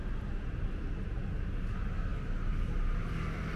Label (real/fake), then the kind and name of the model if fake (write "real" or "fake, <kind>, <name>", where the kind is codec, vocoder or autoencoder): real